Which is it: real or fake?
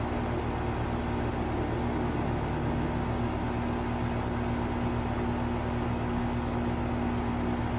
real